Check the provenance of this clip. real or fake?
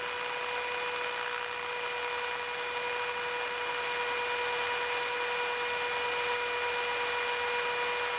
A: real